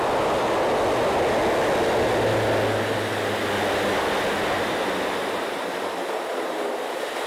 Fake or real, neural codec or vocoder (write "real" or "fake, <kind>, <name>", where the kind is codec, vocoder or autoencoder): real